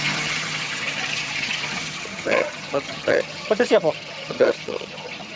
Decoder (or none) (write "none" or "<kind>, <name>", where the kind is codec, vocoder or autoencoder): vocoder, HiFi-GAN